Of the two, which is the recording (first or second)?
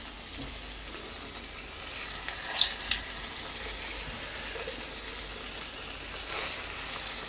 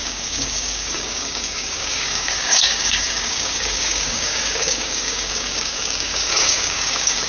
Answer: first